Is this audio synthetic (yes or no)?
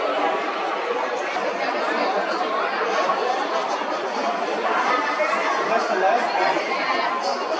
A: no